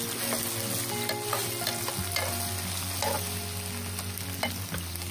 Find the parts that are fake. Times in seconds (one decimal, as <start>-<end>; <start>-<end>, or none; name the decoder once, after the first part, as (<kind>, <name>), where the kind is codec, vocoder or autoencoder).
none